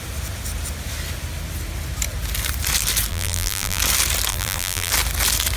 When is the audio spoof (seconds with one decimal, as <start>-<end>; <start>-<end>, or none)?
3.1-3.8; 4.3-4.9